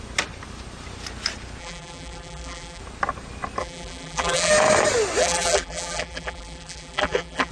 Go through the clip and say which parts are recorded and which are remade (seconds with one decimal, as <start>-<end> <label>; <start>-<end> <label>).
0.0-1.6 recorded; 1.6-2.8 remade; 2.8-3.6 recorded; 3.6-4.5 remade; 4.5-5.2 recorded; 5.2-7.5 remade